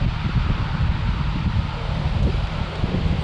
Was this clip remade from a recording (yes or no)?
no